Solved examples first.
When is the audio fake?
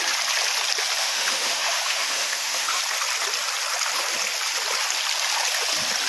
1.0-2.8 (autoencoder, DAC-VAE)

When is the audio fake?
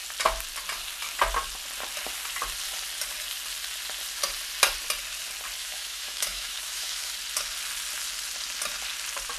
5.6-7.1 (autoencoder, DAC-VAE)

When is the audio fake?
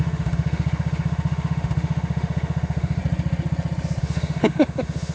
0.0-3.0 (autoencoder, DAC-VAE); 4.0-5.1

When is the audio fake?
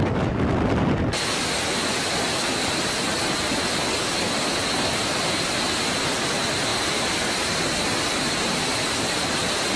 none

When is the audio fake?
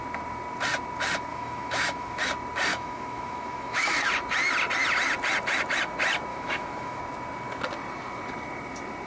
1.3-2.2 (autoencoder, DAC-VAE); 2.7-4.1; 6.3-7.0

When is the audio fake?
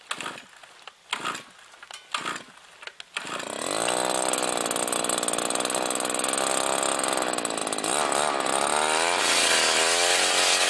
none